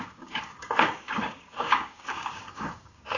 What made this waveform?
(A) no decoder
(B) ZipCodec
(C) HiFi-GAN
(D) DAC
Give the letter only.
D